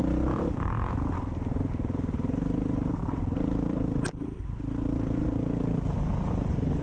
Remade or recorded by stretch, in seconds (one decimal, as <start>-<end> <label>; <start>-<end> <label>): 0.0-5.2 remade; 5.2-6.8 recorded